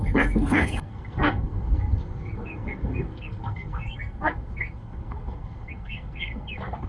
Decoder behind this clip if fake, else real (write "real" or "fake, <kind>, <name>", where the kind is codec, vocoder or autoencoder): fake, codec, SNAC